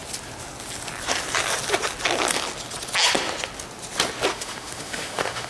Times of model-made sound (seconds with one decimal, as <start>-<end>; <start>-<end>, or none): 4.3-5.5